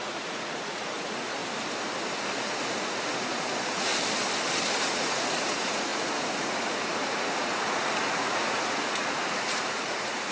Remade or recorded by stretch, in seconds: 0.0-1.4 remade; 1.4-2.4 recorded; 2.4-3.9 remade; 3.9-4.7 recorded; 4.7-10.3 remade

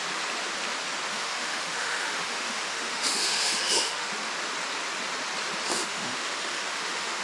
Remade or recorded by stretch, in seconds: 0.0-1.1 recorded; 1.1-4.1 remade; 4.1-5.7 recorded; 5.7-7.2 remade

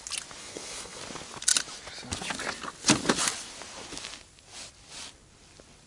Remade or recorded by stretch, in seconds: 0.0-0.4 recorded; 0.4-1.0 remade; 1.0-5.9 recorded

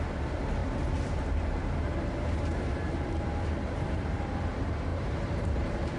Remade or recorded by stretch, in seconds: 0.0-0.6 recorded; 0.6-4.2 remade; 4.2-4.9 recorded; 4.9-6.0 remade

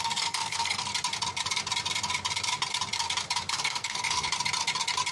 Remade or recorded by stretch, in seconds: 0.0-0.9 remade; 0.9-3.5 recorded; 3.5-4.3 remade; 4.3-5.1 recorded

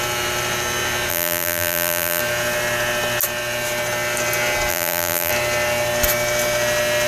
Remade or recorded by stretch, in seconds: 0.0-1.1 recorded; 1.1-2.2 remade; 2.2-4.7 recorded; 4.7-5.3 remade; 5.3-7.1 recorded